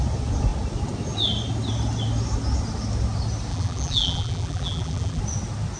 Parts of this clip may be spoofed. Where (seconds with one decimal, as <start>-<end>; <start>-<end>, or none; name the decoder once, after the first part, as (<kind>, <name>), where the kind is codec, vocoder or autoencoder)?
3.5-5.2 (vocoder, BigVGAN v2)